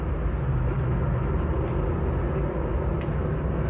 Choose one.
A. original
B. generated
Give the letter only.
A